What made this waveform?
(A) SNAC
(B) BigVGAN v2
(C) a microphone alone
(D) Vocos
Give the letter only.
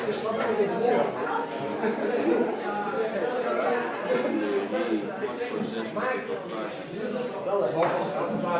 C